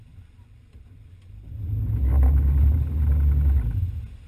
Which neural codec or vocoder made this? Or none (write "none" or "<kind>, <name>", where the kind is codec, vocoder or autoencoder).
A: none